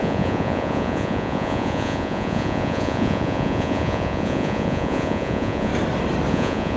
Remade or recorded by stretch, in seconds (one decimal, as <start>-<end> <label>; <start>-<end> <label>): 0.0-5.7 remade; 5.7-6.3 recorded; 6.3-6.8 remade

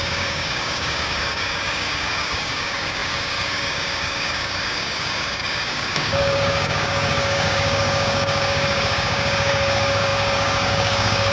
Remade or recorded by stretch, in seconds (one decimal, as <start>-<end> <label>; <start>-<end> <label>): 0.0-11.3 remade